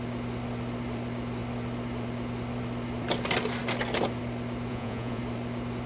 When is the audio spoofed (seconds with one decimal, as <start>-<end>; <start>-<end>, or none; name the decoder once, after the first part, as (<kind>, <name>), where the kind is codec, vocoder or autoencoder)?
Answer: 4.7-5.2 (vocoder, Vocos)